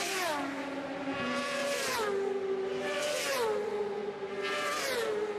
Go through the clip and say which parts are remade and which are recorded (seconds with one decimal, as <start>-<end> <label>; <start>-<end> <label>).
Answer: 0.0-5.4 recorded